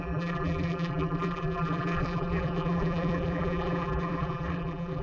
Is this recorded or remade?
remade